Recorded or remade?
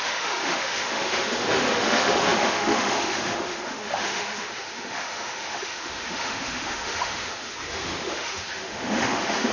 remade